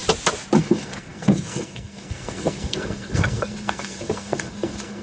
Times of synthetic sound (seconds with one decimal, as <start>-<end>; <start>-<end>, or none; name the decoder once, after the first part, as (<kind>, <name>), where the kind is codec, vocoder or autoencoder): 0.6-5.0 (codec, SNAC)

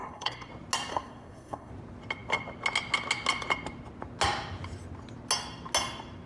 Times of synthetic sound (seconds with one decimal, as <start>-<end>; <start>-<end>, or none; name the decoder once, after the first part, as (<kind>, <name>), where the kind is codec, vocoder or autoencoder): 0.0-0.5 (codec, SNAC); 0.9-1.7

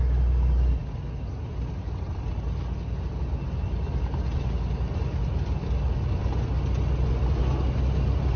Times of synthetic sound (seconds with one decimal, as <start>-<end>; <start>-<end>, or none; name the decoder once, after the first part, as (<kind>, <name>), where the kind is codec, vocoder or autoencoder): none